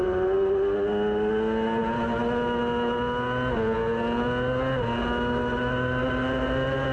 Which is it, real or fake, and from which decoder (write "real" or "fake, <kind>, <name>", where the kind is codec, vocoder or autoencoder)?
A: real